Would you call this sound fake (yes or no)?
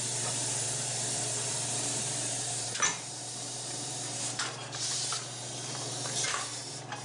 yes